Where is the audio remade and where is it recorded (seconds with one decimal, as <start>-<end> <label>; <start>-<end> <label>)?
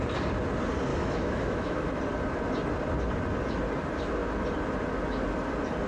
0.0-0.9 recorded; 0.9-2.0 remade; 2.0-5.9 recorded